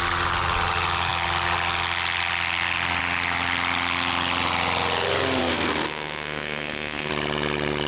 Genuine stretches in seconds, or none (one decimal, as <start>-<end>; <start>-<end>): 0.0-5.4; 7.1-7.9